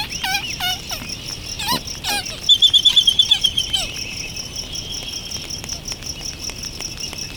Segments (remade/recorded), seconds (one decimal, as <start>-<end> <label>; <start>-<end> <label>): 0.0-7.4 recorded